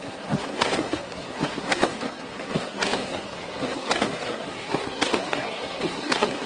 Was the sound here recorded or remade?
remade